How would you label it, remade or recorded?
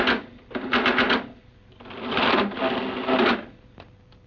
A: recorded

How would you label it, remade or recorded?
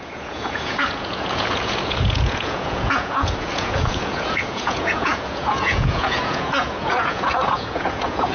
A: remade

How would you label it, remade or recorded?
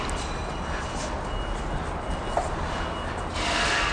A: recorded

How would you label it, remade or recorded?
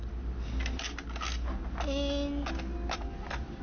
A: recorded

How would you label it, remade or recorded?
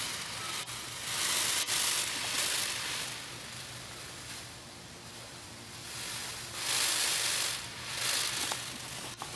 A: recorded